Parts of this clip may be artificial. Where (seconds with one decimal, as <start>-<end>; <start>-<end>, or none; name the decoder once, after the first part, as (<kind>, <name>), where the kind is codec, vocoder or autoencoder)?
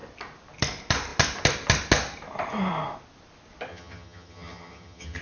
3.7-5.2 (vocoder, HiFi-GAN)